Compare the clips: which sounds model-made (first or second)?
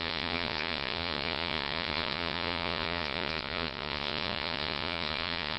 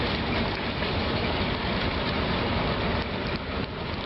first